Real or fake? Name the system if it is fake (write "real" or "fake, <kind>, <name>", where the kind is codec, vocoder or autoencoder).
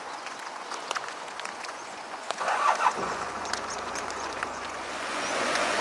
fake, vocoder, Vocos